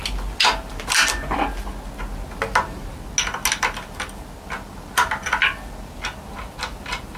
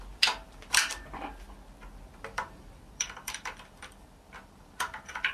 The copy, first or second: second